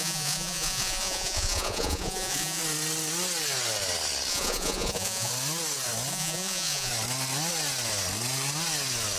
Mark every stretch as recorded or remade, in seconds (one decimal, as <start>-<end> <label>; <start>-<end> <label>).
0.0-2.6 remade; 2.6-4.3 recorded; 4.3-5.3 remade; 5.3-6.1 recorded; 6.1-6.9 remade; 6.9-9.2 recorded